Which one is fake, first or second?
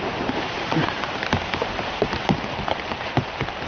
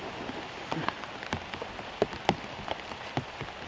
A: first